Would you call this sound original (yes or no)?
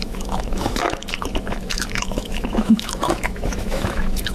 no